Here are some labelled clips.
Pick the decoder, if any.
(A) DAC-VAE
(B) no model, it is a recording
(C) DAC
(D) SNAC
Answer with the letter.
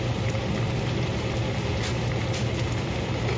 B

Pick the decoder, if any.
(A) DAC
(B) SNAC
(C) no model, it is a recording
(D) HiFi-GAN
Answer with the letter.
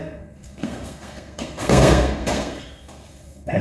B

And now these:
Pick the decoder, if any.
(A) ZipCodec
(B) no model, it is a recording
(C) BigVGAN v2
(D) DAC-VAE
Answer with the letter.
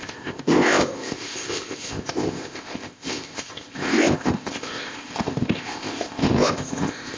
A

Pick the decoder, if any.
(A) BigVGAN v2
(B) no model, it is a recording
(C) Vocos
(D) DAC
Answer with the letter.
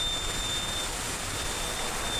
B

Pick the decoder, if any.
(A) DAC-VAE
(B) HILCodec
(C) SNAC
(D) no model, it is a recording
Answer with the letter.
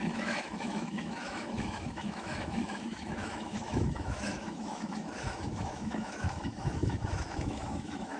A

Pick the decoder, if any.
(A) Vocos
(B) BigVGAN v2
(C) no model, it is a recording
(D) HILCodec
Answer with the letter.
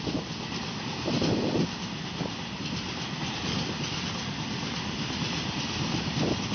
C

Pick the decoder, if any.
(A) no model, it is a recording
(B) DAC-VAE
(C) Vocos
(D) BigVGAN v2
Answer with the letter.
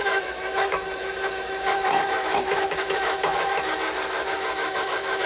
B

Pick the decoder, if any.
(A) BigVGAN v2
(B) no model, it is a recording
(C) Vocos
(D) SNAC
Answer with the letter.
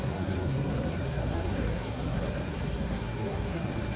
D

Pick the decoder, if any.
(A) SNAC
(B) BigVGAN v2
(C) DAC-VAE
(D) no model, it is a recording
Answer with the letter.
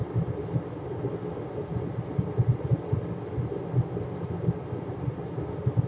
D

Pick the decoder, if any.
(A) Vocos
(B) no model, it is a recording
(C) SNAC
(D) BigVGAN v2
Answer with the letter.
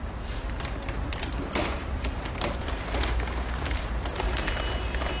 D